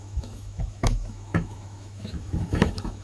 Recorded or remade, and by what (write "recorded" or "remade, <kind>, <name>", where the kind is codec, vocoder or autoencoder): remade, autoencoder, DAC-VAE